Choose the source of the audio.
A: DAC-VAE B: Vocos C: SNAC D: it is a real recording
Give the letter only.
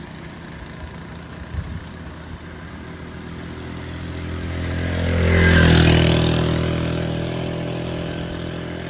D